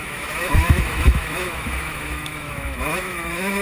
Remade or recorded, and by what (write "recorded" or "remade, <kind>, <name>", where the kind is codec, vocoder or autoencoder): remade, autoencoder, DAC-VAE